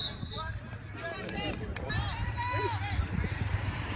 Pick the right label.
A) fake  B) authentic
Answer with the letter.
A